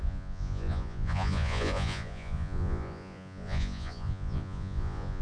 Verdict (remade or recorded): remade